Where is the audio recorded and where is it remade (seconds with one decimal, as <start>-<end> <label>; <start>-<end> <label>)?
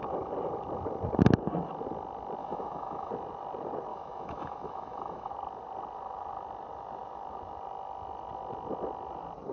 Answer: 0.0-2.4 recorded; 2.4-3.1 remade; 3.1-3.9 recorded; 3.9-5.3 remade; 5.3-9.5 recorded